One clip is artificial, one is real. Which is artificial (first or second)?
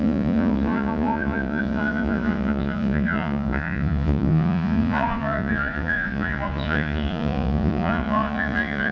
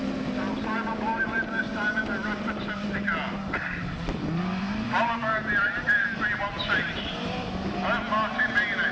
first